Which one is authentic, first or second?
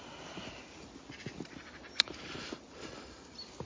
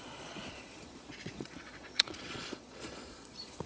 first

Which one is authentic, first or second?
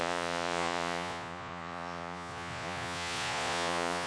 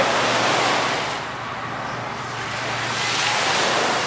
second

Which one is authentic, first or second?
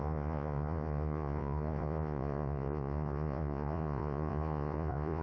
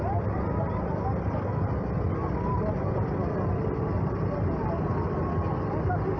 second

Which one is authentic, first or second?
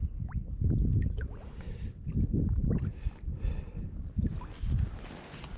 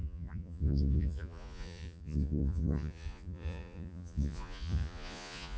first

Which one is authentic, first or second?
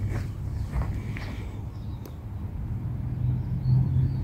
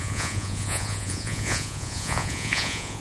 first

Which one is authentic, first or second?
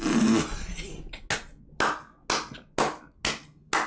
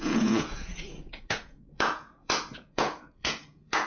first